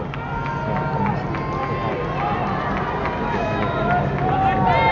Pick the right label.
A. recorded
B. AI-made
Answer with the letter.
A